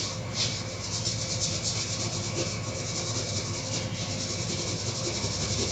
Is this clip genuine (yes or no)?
yes